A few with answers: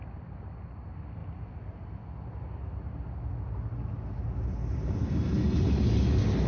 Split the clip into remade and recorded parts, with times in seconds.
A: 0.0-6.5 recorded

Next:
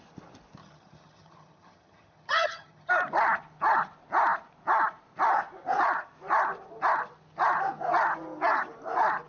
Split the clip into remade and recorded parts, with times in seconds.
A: 0.0-0.6 recorded; 0.6-2.9 remade; 2.9-9.3 recorded

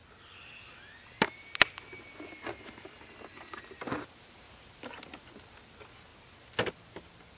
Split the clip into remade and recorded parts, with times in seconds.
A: 0.0-7.4 recorded

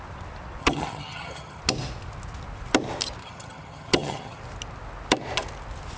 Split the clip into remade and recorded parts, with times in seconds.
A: 0.0-0.6 recorded; 0.6-1.6 remade; 1.6-3.2 recorded; 3.2-4.4 remade; 4.4-6.0 recorded

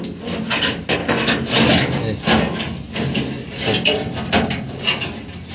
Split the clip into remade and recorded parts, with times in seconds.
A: 0.0-5.5 recorded

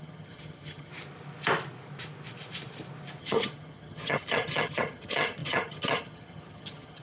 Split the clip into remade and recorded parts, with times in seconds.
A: 0.0-0.9 remade; 0.9-3.2 recorded; 3.2-7.0 remade